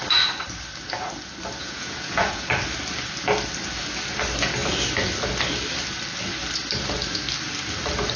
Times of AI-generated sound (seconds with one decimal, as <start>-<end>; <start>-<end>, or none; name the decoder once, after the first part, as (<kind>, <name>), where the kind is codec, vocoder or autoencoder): 1.6-2.5 (vocoder, Vocos)